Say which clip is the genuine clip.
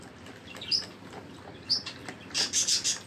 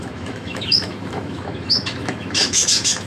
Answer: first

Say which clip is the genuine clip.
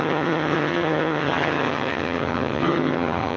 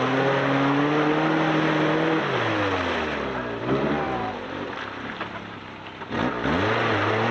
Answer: second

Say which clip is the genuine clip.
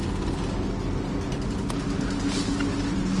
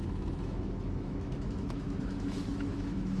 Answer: first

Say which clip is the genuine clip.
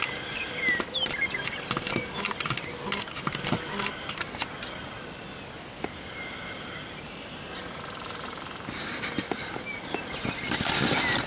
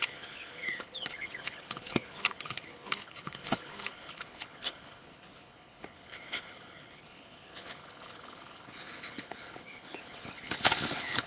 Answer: first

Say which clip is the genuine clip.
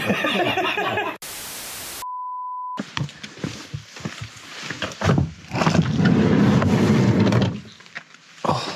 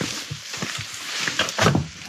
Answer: first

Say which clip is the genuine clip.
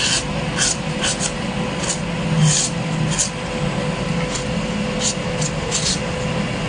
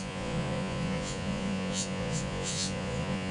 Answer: first